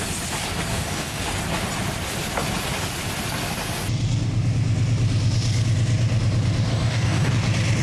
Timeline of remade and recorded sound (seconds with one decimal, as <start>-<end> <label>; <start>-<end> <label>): 0.0-0.7 recorded; 0.7-1.2 remade; 1.2-6.7 recorded; 6.7-7.3 remade; 7.3-7.8 recorded